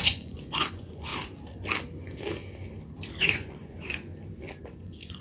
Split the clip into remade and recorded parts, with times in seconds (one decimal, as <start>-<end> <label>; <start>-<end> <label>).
0.0-1.1 remade; 1.1-3.2 recorded; 3.2-4.1 remade; 4.1-4.6 recorded; 4.6-5.2 remade